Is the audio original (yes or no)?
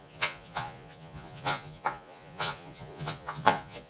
no